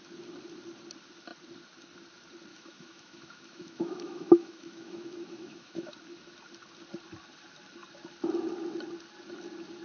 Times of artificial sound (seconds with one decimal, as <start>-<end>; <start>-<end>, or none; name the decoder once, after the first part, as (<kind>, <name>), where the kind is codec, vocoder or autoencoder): 2.5-5.9 (autoencoder, DAC-VAE)